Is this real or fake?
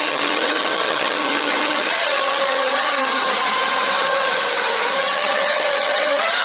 fake